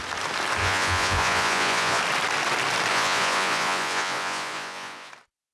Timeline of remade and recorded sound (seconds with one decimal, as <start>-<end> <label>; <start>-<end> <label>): 0.0-0.6 recorded; 0.6-2.0 remade; 2.0-2.9 recorded; 2.9-5.1 remade; 5.1-5.5 recorded